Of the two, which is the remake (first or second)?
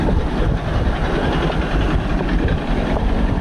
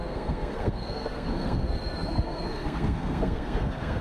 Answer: second